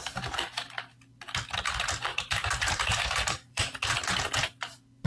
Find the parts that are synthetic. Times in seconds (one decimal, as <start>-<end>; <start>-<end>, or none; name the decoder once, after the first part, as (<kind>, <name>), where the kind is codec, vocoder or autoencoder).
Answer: 2.1-3.9 (vocoder, BigVGAN v2)